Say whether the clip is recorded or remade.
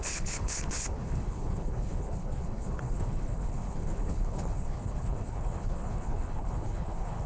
remade